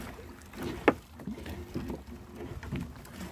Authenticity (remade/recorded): recorded